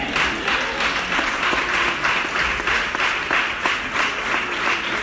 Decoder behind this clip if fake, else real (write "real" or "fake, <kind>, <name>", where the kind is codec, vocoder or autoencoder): real